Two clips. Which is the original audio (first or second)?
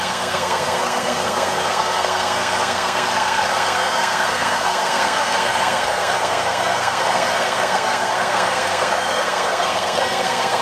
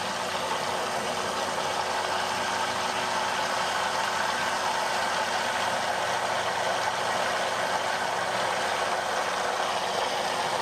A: second